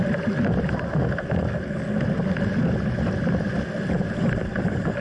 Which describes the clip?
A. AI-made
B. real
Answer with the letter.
B